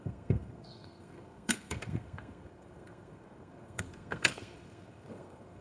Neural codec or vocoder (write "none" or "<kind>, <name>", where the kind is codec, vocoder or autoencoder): codec, SNAC